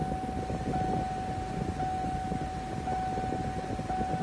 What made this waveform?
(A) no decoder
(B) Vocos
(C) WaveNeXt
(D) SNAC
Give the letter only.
A